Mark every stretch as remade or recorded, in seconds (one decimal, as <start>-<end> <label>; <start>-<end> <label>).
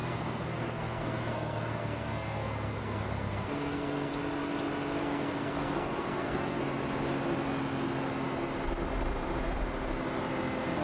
0.0-4.1 remade; 4.1-5.0 recorded; 5.0-6.6 remade; 6.6-10.8 recorded